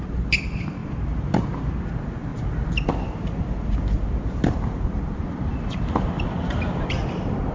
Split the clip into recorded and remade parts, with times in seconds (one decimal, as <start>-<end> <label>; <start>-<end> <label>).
0.0-7.5 recorded